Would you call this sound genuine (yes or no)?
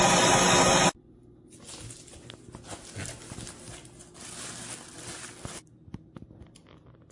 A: yes